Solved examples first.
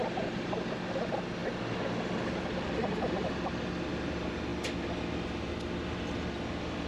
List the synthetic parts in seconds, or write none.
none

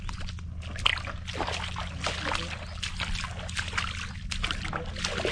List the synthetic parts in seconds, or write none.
none

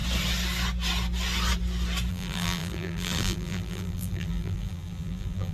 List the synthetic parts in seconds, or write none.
2.1-5.5

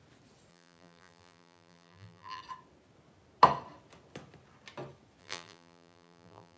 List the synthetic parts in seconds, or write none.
0.5-2.4; 5.2-6.6

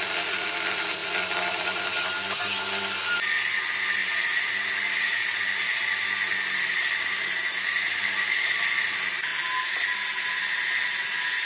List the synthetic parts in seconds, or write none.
0.0-9.3; 10.7-11.5

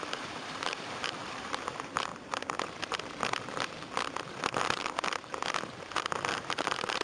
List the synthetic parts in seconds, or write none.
0.0-2.1; 6.3-7.0